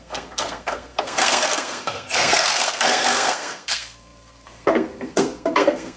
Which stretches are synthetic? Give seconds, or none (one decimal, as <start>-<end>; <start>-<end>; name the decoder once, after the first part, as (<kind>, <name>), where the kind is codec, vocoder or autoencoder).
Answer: 0.0-6.0 (codec, SNAC)